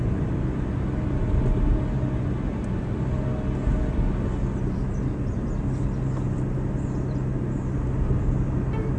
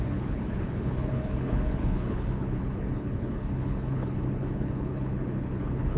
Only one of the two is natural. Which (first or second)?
first